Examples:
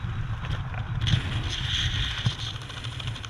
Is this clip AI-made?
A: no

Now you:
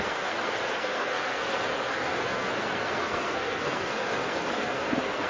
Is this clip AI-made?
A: yes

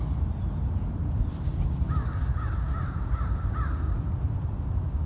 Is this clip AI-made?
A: no